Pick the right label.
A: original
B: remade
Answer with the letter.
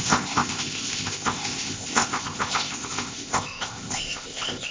B